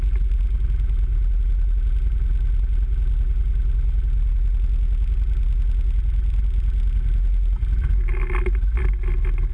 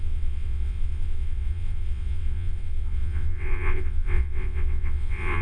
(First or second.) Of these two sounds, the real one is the first